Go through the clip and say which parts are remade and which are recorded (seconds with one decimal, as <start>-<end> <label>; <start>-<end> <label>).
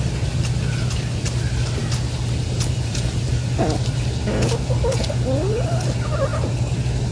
0.0-7.1 recorded